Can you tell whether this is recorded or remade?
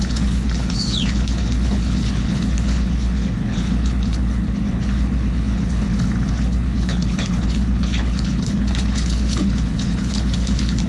remade